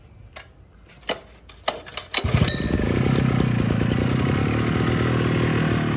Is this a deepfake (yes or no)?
no